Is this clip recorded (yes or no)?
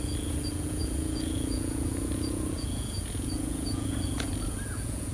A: no